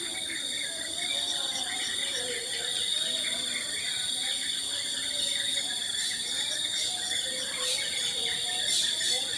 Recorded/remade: remade